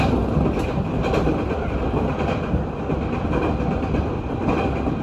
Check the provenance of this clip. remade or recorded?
recorded